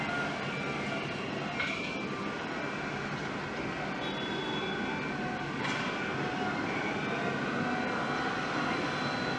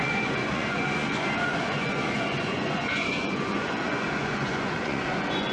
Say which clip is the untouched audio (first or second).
first